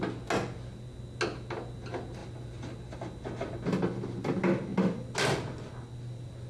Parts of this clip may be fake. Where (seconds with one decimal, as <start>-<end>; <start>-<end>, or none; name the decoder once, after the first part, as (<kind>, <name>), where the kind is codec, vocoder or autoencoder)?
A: none